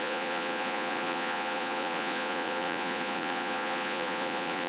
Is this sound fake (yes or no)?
yes